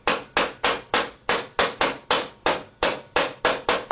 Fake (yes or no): no